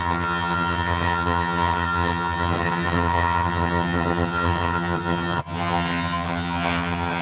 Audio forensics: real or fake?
fake